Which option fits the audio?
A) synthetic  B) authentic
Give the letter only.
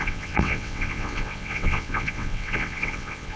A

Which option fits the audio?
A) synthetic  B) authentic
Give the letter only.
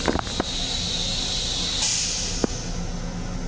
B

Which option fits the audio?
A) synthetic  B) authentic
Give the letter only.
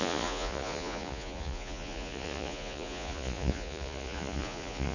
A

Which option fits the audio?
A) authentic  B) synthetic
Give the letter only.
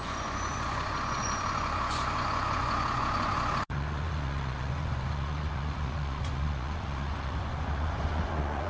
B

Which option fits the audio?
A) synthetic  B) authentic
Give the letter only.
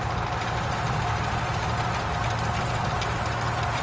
B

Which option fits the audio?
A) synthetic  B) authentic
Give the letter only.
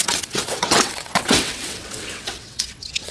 A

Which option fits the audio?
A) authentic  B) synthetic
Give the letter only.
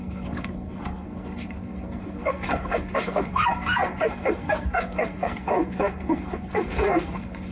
B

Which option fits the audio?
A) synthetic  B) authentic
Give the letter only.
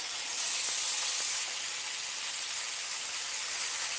B